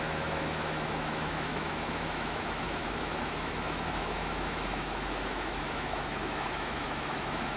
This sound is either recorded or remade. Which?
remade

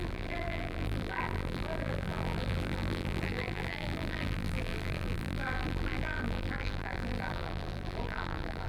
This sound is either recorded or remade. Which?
remade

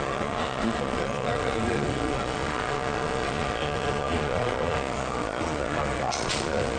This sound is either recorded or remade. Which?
remade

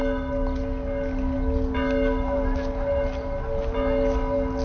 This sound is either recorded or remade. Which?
recorded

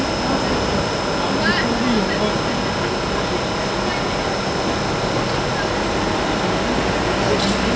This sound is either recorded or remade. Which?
recorded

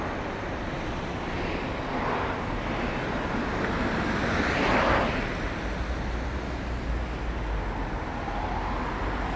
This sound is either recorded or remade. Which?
recorded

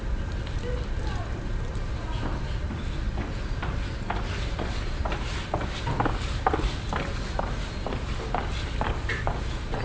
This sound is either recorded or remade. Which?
recorded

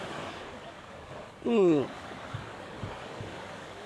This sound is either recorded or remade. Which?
remade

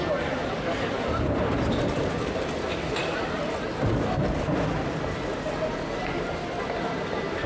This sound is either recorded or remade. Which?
recorded